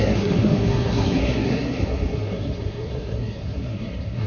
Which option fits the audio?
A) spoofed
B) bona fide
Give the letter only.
A